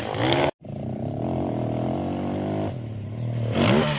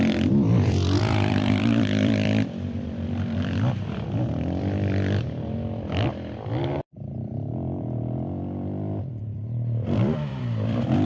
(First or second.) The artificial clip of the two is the second